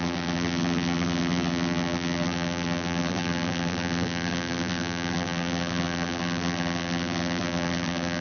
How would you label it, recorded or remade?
remade